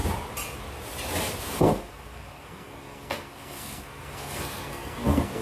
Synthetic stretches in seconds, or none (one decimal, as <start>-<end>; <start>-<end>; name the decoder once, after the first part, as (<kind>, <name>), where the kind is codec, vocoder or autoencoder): 1.4-5.4 (codec, SNAC)